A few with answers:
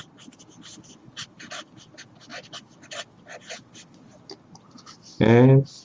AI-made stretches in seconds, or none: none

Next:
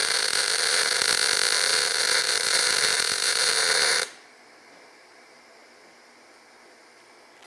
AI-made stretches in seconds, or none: 0.0-1.0; 1.7-5.4

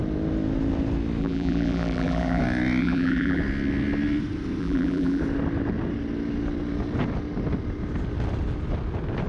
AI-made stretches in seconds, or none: 1.2-2.4; 2.8-3.4; 4.6-5.2

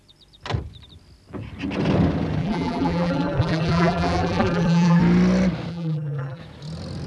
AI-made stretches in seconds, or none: 2.4-5.0; 5.7-6.4

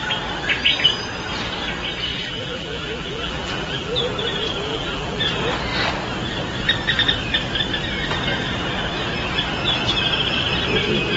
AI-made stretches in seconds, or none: 2.1-4.0; 4.7-5.2